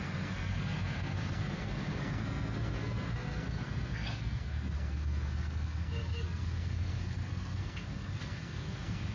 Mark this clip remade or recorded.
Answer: remade